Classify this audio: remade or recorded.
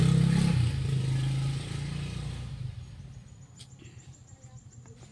recorded